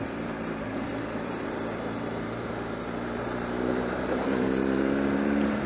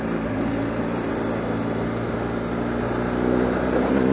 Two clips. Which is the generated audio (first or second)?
first